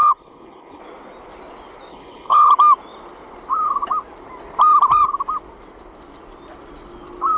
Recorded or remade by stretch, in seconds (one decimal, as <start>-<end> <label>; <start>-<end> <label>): 0.0-0.8 remade; 0.8-1.9 recorded; 1.9-2.5 remade; 2.5-7.4 recorded